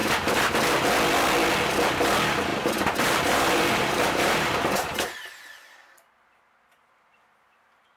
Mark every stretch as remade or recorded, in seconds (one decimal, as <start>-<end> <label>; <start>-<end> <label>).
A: 0.0-0.5 remade; 0.5-2.5 recorded; 2.5-5.4 remade; 5.4-8.0 recorded